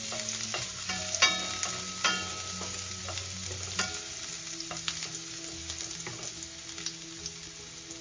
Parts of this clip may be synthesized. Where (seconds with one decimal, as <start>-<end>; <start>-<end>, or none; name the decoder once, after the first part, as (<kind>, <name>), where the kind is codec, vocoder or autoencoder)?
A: none